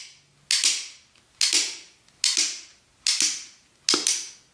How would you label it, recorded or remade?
recorded